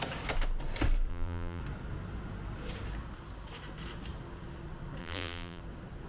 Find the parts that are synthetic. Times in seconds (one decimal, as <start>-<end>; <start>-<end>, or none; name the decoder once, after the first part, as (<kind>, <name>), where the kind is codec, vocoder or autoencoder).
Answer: 1.1-1.6 (vocoder, BigVGAN v2); 5.0-5.6